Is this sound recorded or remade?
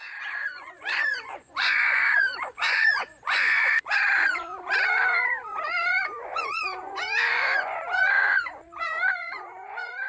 remade